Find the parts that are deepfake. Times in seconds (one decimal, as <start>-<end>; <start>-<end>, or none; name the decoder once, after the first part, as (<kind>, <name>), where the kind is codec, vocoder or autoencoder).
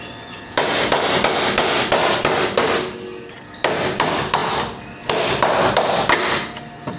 none